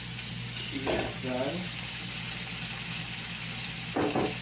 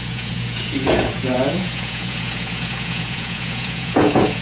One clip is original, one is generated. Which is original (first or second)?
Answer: first